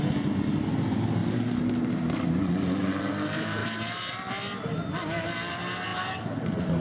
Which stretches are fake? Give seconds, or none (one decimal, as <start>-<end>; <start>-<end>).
3.6-4.3; 5.9-6.8